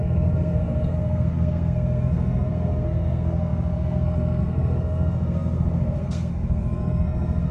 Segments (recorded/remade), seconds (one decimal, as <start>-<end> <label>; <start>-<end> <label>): 0.0-7.5 remade